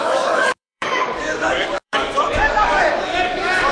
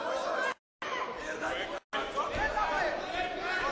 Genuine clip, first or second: second